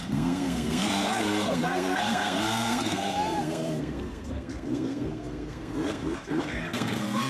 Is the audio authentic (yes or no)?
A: no